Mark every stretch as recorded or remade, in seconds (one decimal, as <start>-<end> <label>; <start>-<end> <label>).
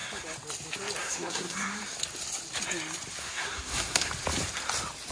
0.0-1.0 recorded; 1.0-1.8 remade; 1.8-3.2 recorded; 3.2-4.1 remade; 4.1-5.1 recorded